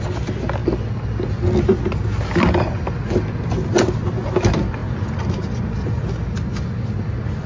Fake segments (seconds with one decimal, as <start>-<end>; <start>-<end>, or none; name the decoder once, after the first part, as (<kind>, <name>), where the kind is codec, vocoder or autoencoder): none

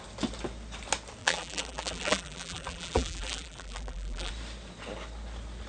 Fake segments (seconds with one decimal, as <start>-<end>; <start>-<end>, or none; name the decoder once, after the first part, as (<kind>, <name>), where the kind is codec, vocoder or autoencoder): 1.2-4.3 (vocoder, BigVGAN v2)

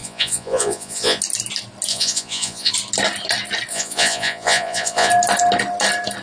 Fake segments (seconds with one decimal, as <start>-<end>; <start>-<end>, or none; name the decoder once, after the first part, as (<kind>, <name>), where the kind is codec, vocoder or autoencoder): 0.0-1.2 (vocoder, Vocos); 1.9-2.7; 3.7-5.1

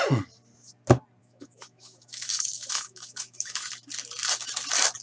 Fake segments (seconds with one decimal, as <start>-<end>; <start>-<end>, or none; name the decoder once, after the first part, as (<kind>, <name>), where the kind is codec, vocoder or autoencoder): 1.2-3.7 (autoencoder, DAC-VAE)

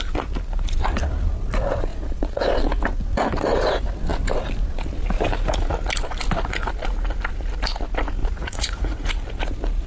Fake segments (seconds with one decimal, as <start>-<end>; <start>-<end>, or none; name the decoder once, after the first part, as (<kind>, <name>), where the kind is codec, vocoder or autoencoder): 1.9-2.4 (vocoder, Vocos); 8.2-9.1

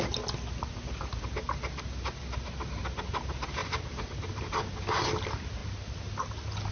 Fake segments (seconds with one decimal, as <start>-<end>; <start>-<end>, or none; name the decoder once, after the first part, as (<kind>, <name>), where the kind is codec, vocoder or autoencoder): 3.6-4.6 (vocoder, BigVGAN v2)